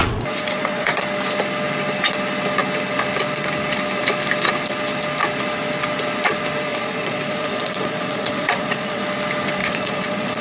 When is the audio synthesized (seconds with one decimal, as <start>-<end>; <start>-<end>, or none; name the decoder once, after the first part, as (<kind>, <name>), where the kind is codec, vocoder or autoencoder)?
0.0-1.0 (vocoder, Vocos); 6.7-9.0; 9.6-10.4